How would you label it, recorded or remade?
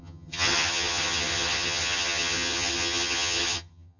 remade